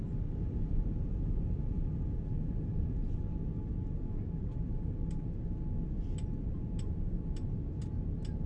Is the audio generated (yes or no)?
no